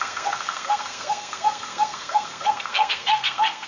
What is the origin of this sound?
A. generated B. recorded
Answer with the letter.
A